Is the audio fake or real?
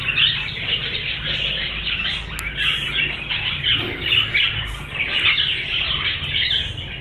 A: real